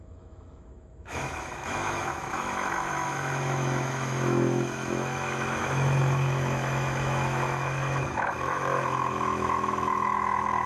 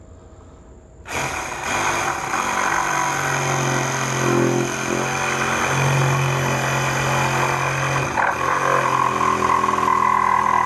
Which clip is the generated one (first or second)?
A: first